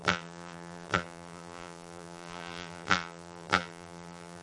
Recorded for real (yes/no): no